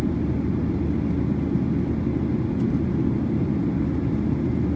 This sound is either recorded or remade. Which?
recorded